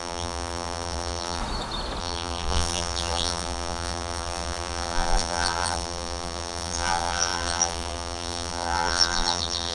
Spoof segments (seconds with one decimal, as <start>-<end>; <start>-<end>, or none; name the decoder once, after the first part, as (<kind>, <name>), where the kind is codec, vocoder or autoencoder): 0.0-1.4 (vocoder, BigVGAN v2); 2.0-9.7